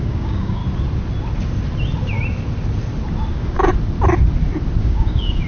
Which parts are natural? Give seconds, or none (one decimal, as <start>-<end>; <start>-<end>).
0.6-3.3; 3.7-4.8